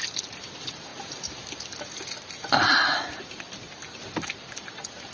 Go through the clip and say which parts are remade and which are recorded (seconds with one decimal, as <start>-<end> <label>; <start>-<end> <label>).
0.0-5.1 recorded